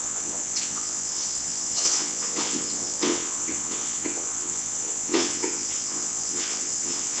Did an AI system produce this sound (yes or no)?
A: yes